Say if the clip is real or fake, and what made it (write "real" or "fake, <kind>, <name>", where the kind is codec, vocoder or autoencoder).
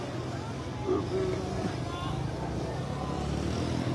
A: real